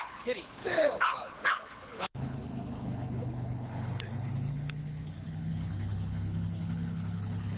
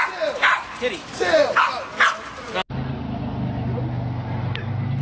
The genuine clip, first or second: second